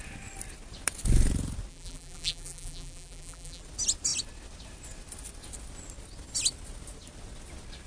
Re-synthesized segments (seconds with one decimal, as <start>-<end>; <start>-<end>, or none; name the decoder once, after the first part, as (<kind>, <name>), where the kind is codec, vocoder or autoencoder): 1.7-3.6 (vocoder, BigVGAN v2)